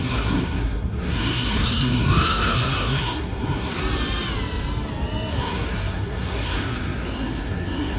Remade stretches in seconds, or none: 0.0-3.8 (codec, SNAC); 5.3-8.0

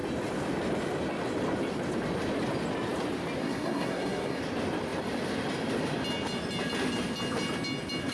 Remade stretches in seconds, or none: 3.4-4.4 (codec, SNAC)